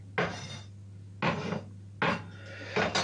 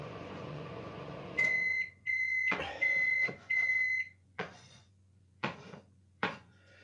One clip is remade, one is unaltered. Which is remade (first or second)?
second